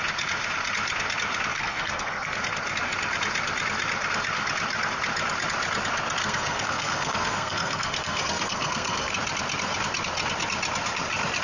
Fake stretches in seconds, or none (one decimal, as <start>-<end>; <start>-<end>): 1.5-2.4; 6.2-9.1